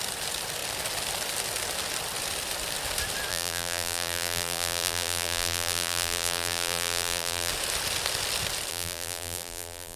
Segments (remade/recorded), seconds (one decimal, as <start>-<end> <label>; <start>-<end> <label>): 0.0-3.3 recorded; 3.3-7.5 remade; 7.5-8.7 recorded; 8.7-10.0 remade